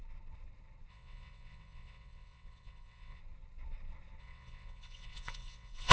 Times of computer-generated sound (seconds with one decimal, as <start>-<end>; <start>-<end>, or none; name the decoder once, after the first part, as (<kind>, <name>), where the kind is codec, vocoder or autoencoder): 0.9-3.2 (vocoder, WaveNeXt); 4.2-5.9